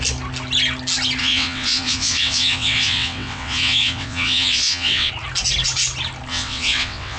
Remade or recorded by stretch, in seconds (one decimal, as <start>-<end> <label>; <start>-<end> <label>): 0.0-1.2 recorded; 1.2-5.1 remade; 5.1-6.3 recorded; 6.3-7.2 remade